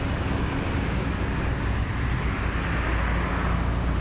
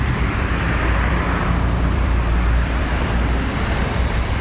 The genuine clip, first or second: first